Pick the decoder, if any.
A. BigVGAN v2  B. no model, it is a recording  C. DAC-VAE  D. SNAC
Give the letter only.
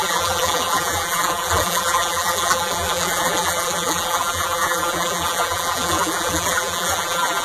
A